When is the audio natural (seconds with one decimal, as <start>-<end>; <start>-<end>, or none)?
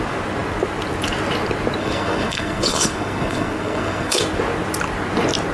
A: 0.0-1.8; 4.2-5.5